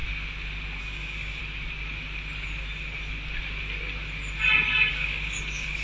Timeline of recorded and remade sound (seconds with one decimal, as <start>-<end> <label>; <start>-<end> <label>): 0.0-0.8 recorded; 0.8-1.4 remade; 1.4-4.9 recorded; 4.9-5.8 remade